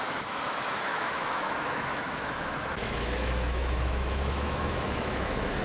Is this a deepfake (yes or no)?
yes